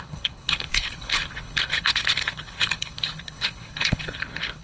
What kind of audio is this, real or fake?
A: fake